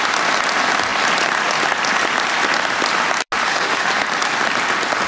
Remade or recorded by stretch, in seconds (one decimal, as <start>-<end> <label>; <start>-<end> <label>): 0.0-3.4 recorded; 3.4-3.9 remade; 3.9-5.1 recorded